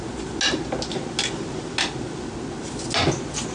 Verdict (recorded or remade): recorded